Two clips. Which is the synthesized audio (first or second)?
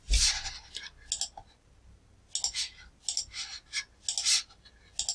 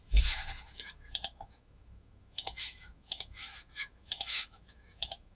second